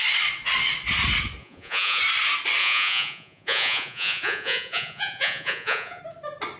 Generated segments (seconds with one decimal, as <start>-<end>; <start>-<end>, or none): 1.4-2.0; 2.6-6.0